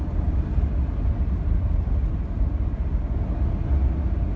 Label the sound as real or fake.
real